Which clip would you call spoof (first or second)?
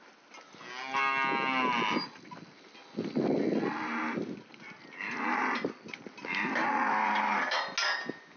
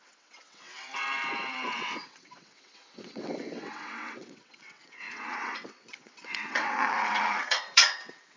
second